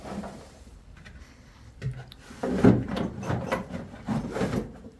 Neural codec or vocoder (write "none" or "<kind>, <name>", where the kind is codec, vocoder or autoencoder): vocoder, BigVGAN v2